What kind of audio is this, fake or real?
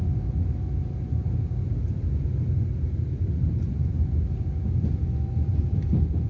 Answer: real